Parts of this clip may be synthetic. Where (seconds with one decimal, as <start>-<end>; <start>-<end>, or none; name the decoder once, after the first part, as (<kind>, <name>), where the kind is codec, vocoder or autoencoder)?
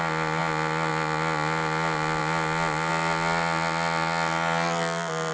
none